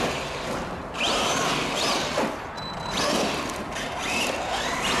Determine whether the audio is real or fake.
real